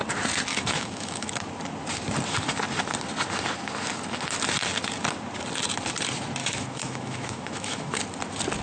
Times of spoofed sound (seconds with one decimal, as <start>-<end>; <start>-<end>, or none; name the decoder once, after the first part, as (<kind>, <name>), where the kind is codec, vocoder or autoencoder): 0.5-1.3 (autoencoder, DAC-VAE); 6.4-8.0